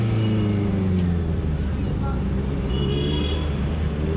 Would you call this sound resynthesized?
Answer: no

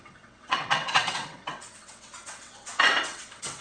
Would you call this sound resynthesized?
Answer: yes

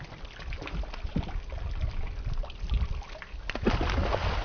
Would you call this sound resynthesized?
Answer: no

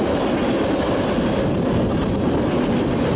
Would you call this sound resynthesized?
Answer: no